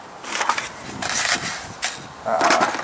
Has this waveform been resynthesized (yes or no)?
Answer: no